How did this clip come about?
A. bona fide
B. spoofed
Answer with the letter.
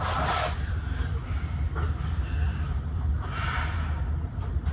A